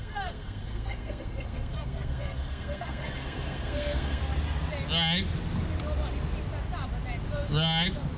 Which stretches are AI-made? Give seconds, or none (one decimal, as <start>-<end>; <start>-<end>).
0.0-4.2

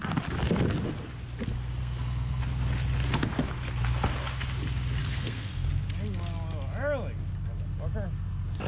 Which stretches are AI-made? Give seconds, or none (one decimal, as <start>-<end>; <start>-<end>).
1.8-2.4; 5.0-5.7

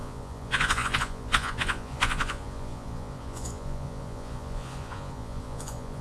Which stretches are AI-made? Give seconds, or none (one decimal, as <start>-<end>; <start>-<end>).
0.0-6.0

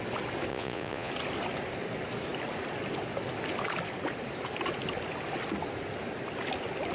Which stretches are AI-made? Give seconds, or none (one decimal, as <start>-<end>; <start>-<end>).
0.5-1.1

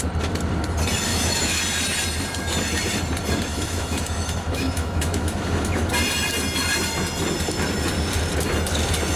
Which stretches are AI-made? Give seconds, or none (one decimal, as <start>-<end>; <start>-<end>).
1.1-1.6; 3.5-5.9